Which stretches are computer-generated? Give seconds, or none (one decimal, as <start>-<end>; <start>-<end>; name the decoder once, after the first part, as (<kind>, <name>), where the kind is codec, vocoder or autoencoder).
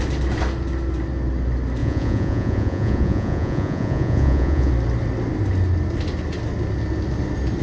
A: 1.8-4.7 (vocoder, Vocos)